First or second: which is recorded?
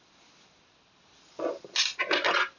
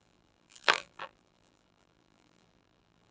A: first